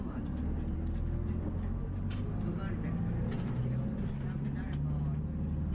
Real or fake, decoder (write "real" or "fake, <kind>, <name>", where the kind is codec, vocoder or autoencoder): real